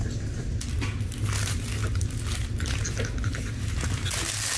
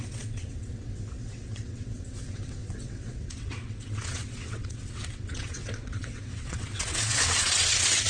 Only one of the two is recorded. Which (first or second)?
first